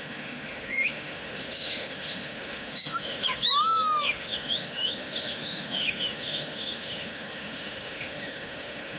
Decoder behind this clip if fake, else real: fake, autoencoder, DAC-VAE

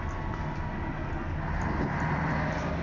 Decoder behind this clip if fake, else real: real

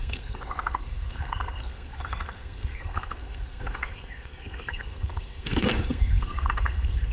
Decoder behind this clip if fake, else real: fake, codec, SNAC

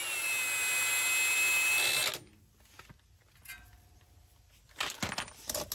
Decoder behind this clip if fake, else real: real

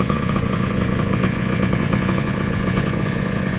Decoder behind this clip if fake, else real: fake, vocoder, Vocos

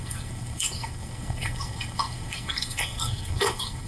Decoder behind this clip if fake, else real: fake, codec, SNAC